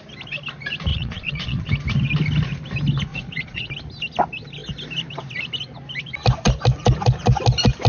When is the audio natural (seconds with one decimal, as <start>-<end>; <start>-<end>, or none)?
0.0-0.9; 1.7-3.1; 3.7-7.9